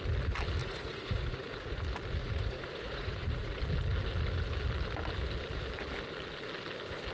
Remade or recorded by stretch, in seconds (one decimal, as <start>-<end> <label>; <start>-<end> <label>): 0.0-0.6 recorded; 0.6-1.8 remade; 1.8-2.2 recorded; 2.2-3.6 remade; 3.6-7.1 recorded

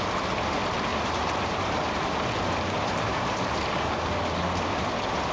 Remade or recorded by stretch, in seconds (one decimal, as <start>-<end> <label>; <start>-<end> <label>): 0.0-0.9 recorded; 0.9-4.1 remade; 4.1-5.3 recorded

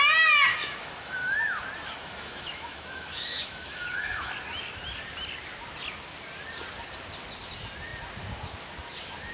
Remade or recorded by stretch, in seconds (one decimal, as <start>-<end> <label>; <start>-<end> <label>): 0.0-0.5 recorded; 0.5-1.6 remade; 1.6-2.0 recorded; 2.0-4.3 remade; 4.3-9.3 recorded

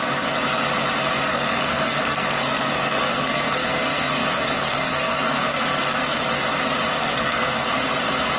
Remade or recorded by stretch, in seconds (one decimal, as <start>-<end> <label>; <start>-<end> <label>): 0.0-1.3 recorded; 1.3-6.2 remade; 6.2-7.0 recorded; 7.0-7.8 remade; 7.8-8.4 recorded